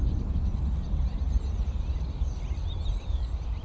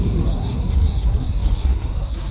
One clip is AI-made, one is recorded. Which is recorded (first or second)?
first